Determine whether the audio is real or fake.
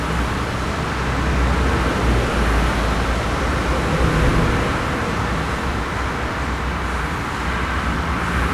real